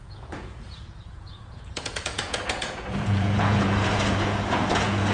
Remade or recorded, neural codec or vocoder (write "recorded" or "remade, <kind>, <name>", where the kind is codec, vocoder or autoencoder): remade, vocoder, Vocos